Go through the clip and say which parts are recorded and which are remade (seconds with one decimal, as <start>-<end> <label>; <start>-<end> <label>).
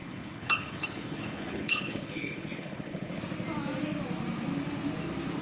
0.0-3.2 remade; 3.2-5.4 recorded